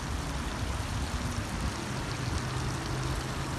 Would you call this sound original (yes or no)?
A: yes